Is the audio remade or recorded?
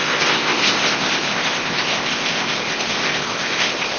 remade